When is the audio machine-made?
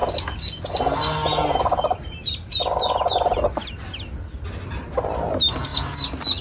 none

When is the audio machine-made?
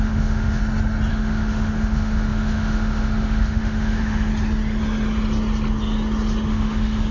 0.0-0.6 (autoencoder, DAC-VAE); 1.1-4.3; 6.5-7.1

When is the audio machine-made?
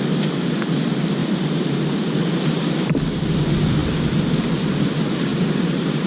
1.2-2.1 (vocoder, BigVGAN v2); 5.3-6.1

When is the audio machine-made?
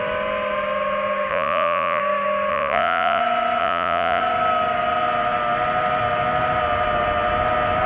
1.3-2.0 (vocoder, Vocos); 2.5-3.2; 3.6-4.2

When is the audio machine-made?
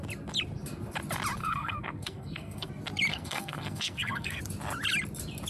1.4-2.7 (codec, SNAC); 3.1-4.4